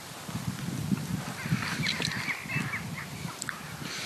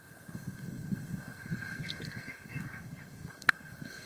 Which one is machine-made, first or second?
second